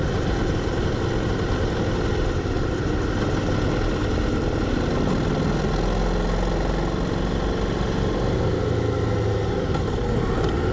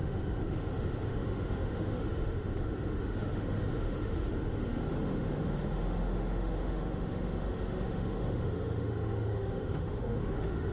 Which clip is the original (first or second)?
first